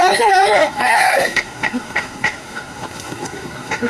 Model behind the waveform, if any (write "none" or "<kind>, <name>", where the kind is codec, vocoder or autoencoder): codec, SNAC